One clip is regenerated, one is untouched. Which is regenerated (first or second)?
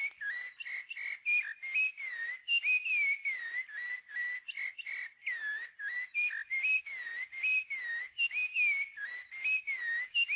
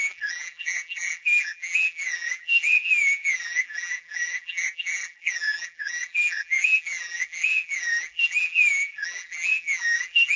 second